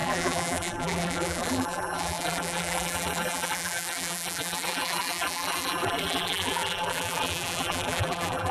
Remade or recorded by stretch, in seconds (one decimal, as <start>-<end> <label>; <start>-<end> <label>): 0.0-8.5 remade